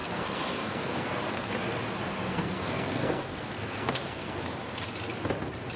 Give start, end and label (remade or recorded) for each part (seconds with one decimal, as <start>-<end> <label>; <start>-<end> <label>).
0.0-1.5 remade; 1.5-2.3 recorded; 2.3-4.5 remade; 4.5-5.8 recorded